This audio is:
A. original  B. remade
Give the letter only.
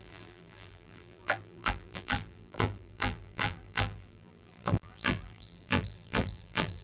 B